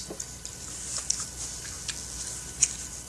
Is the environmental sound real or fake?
real